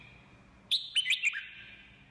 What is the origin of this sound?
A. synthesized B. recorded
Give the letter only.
B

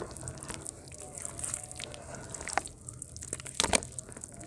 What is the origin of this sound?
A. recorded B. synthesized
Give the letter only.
A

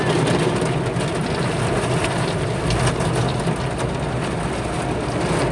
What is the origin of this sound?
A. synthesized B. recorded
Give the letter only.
B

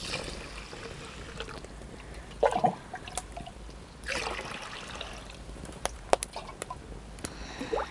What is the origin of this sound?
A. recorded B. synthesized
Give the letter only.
A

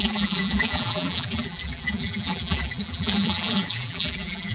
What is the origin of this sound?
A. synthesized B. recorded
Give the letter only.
A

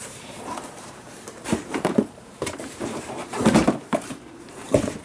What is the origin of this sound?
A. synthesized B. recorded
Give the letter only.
A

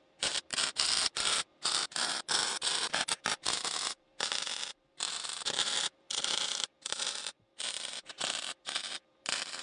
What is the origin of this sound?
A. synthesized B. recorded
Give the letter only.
A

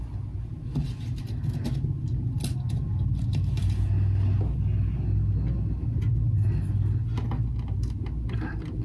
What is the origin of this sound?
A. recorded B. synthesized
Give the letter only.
A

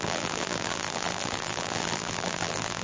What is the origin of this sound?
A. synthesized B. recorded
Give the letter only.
A